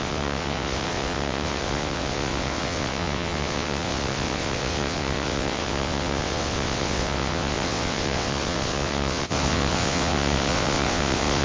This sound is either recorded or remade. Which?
remade